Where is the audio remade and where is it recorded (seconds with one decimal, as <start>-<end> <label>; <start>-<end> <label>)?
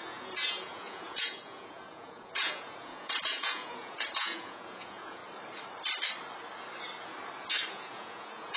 0.0-5.2 remade; 5.2-7.7 recorded; 7.7-8.6 remade